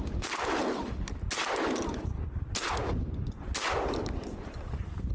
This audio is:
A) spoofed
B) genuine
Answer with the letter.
B